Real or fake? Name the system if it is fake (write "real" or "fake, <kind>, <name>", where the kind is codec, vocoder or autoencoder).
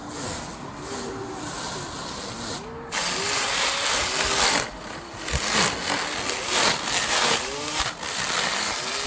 real